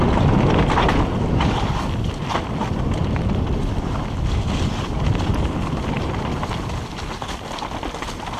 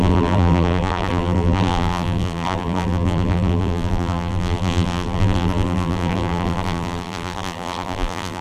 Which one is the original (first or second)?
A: first